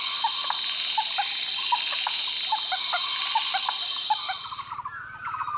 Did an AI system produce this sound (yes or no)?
no